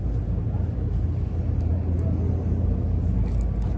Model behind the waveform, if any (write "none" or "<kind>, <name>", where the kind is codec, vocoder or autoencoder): none